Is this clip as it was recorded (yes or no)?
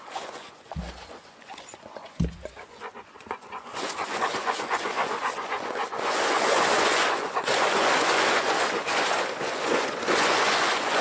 no